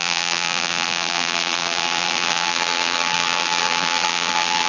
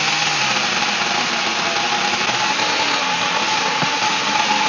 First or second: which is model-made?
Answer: first